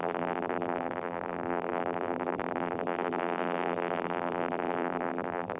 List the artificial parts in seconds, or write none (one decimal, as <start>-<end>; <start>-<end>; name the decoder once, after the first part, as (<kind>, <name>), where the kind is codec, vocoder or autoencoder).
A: 0.0-5.6 (vocoder, BigVGAN v2)